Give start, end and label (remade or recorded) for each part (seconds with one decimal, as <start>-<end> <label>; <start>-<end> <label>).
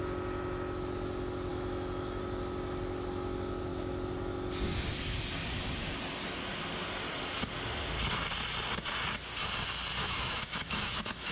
0.0-1.5 recorded; 1.5-2.2 remade; 2.2-10.0 recorded; 10.0-11.3 remade